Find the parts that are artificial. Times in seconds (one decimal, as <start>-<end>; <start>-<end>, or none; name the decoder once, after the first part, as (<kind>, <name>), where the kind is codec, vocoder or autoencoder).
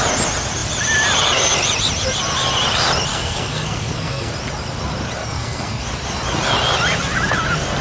3.1-4.3 (codec, SNAC); 5.2-5.8